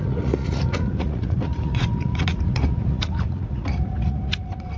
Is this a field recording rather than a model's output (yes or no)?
no